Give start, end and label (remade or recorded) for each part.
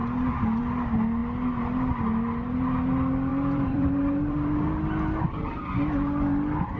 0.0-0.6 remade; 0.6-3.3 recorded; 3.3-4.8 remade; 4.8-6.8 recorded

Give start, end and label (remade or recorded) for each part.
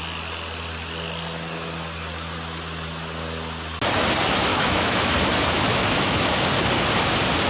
0.0-4.5 recorded; 4.5-5.1 remade; 5.1-5.7 recorded; 5.7-6.3 remade; 6.3-7.5 recorded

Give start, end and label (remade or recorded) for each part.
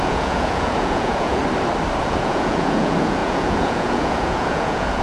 0.0-1.4 remade; 1.4-2.0 recorded; 2.0-5.0 remade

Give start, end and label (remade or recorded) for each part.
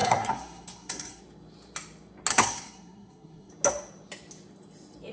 0.0-1.2 remade; 1.2-2.3 recorded; 2.3-3.5 remade; 3.5-5.1 recorded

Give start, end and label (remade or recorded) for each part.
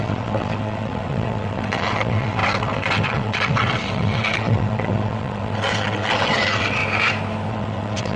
0.0-6.8 remade; 6.8-7.5 recorded; 7.5-8.2 remade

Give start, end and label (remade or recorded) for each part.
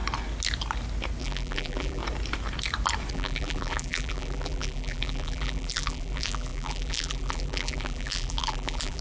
0.0-1.2 recorded; 1.2-2.0 remade; 2.0-3.1 recorded; 3.1-9.0 remade